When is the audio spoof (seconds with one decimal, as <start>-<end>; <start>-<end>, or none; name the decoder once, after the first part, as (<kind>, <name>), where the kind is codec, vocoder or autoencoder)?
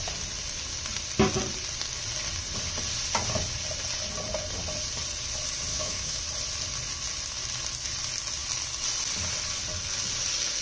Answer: 5.7-6.2 (autoencoder, DAC-VAE)